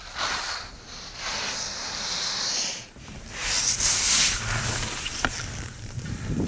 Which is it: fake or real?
real